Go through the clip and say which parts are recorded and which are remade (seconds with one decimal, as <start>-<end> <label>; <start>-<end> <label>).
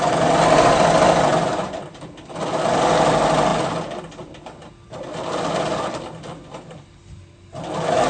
0.0-8.1 recorded